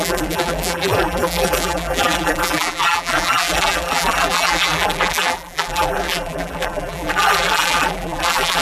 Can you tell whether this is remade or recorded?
remade